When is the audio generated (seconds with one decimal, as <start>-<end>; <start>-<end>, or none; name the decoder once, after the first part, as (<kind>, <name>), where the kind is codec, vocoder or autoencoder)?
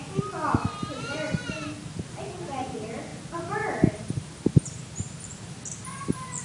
none